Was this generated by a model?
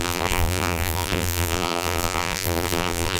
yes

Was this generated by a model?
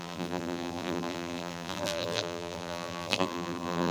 yes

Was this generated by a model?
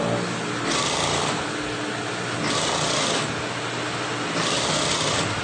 no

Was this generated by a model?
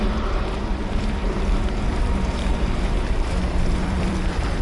yes